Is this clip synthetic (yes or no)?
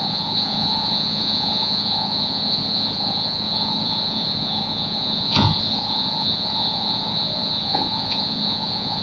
yes